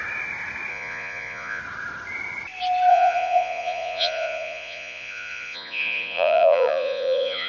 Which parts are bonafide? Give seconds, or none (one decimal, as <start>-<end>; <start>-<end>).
0.0-0.7; 1.6-2.9